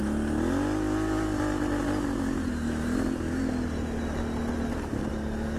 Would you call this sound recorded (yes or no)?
yes